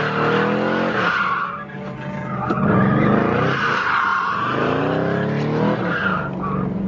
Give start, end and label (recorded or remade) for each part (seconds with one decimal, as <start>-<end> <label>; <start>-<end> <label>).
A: 0.0-6.9 recorded